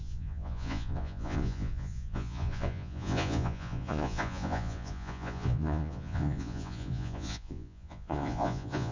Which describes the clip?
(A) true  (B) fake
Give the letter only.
B